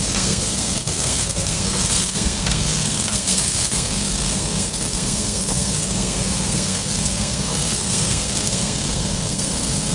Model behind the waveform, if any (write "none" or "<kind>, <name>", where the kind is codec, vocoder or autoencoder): codec, SNAC